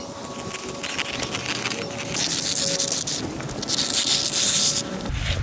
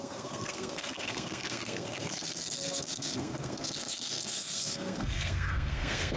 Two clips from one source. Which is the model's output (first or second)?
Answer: second